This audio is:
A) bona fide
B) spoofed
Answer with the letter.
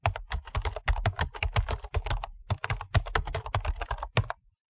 A